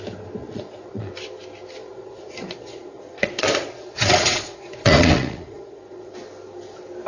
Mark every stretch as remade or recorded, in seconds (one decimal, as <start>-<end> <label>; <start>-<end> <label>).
0.0-0.4 recorded; 0.4-1.1 remade; 1.1-1.8 recorded; 1.8-6.1 remade; 6.1-7.1 recorded